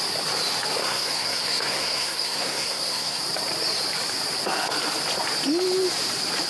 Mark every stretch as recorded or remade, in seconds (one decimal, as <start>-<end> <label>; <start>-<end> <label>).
0.0-0.8 recorded; 0.8-3.2 remade; 3.2-6.5 recorded